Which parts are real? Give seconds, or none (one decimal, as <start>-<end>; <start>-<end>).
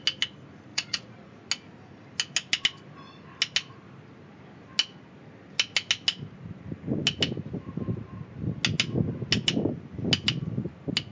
0.0-0.7; 1.4-11.1